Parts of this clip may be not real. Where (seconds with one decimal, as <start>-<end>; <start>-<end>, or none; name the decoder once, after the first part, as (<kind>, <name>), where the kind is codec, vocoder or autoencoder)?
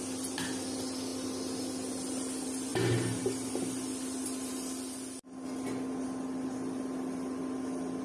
none